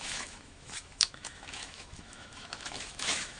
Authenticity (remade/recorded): remade